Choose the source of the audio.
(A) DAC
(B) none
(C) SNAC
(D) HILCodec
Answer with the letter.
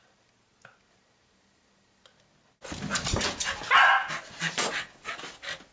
B